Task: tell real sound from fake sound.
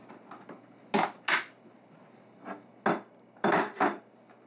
real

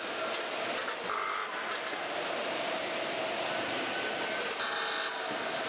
real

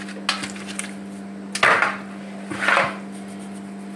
real